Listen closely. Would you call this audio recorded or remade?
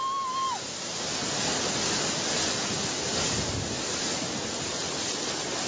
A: recorded